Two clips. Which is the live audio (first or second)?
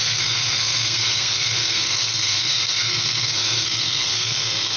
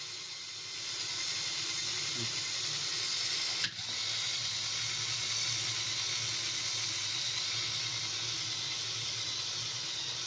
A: second